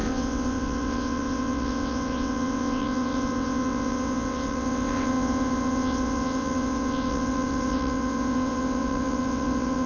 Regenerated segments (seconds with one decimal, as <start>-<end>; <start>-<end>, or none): 0.0-9.9